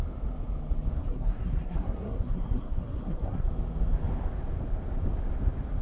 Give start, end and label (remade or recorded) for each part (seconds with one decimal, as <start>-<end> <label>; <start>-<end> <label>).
0.0-1.0 recorded; 1.0-3.5 remade; 3.5-5.8 recorded